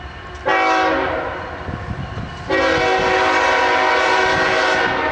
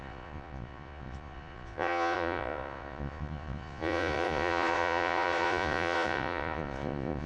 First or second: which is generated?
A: second